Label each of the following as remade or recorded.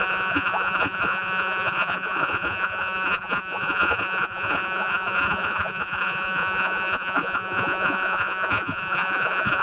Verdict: remade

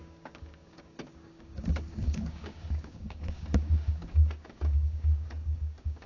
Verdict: remade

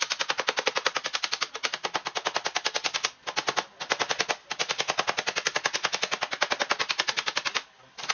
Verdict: recorded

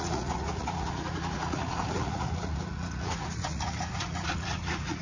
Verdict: remade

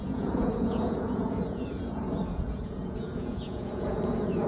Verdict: remade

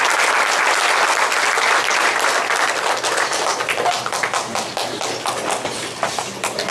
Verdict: recorded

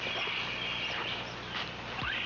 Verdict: recorded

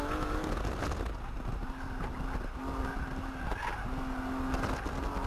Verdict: recorded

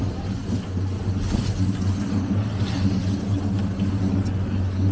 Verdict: recorded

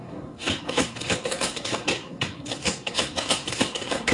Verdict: remade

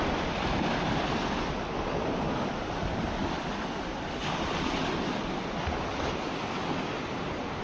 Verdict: recorded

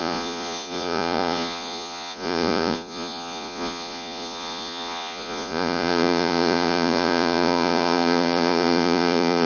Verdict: remade